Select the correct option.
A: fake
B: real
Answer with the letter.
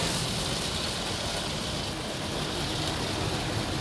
B